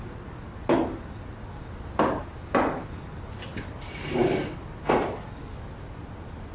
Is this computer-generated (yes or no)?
no